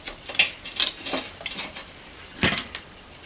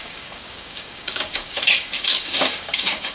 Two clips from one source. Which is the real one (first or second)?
first